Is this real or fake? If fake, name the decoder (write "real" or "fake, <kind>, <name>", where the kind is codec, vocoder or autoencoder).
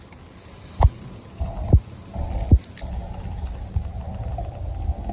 real